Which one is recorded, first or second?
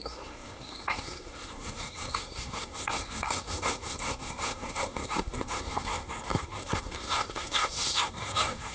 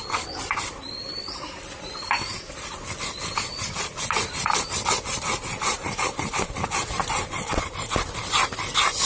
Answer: second